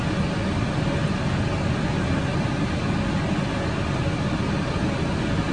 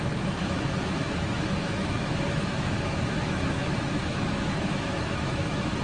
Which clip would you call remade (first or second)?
second